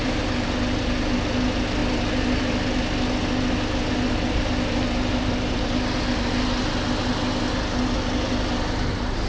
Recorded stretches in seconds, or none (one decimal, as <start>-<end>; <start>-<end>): 0.0-9.3